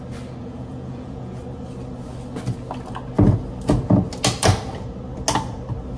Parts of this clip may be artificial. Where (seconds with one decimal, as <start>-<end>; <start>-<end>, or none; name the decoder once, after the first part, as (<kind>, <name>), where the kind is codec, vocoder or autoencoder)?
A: 0.4-1.4 (vocoder, Vocos)